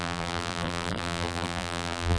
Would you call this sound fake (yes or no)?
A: yes